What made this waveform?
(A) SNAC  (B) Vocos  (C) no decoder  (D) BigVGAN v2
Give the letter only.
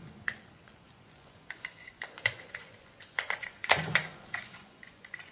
B